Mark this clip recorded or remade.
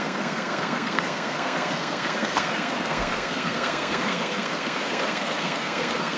remade